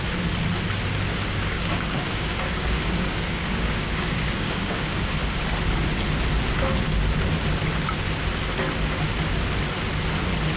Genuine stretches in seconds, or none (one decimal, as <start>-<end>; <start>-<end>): 0.0-1.1; 5.1-10.6